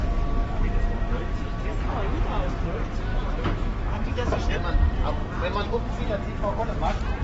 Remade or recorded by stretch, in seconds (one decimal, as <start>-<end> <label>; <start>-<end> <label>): 0.0-3.1 recorded; 3.1-4.5 remade; 4.5-7.2 recorded